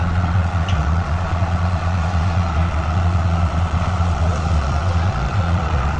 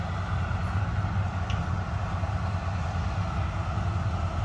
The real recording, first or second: second